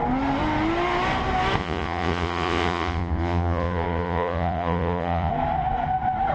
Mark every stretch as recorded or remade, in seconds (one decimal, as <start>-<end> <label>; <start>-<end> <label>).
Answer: 0.0-1.6 recorded; 1.6-5.3 remade; 5.3-6.3 recorded